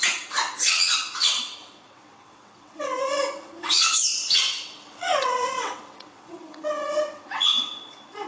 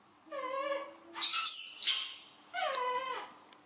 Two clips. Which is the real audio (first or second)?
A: second